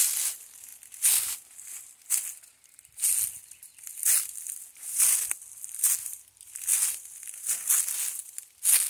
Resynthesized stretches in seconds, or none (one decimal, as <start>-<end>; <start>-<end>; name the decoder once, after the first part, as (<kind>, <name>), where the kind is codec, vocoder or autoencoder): none